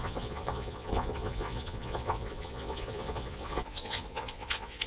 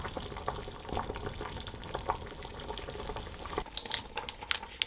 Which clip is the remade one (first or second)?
first